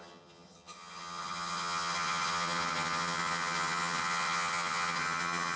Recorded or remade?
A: remade